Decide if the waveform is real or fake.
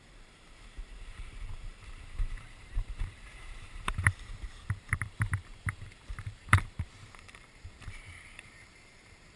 fake